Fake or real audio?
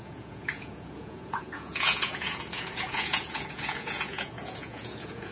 fake